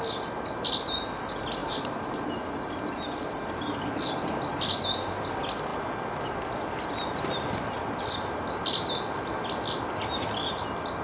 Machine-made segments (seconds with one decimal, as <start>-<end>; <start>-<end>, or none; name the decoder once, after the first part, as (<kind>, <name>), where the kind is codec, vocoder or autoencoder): 1.6-2.7 (vocoder, BigVGAN v2)